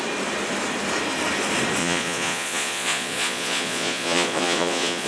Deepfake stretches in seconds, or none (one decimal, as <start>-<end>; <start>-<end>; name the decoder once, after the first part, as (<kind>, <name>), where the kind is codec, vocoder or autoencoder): 1.8-5.1 (vocoder, Vocos)